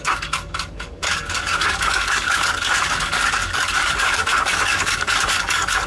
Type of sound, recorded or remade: remade